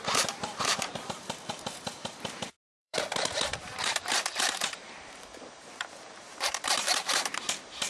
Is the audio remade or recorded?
remade